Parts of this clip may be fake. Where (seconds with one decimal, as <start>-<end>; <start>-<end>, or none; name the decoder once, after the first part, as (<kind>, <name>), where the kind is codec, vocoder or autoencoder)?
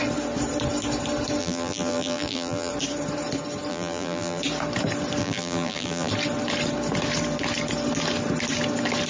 1.4-2.7 (vocoder, BigVGAN v2); 3.7-4.4; 5.2-6.1